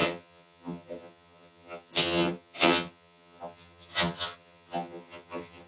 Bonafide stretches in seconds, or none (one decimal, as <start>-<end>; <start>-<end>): none